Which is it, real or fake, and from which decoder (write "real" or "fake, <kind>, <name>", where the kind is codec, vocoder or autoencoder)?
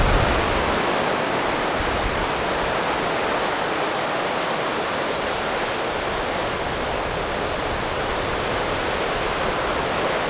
real